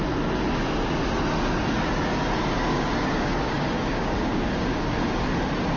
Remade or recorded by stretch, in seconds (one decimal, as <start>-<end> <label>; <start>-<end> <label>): 0.0-2.7 recorded; 2.7-5.0 remade; 5.0-5.8 recorded